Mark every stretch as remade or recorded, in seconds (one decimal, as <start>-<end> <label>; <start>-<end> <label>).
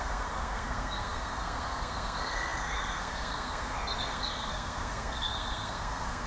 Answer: 0.0-6.3 remade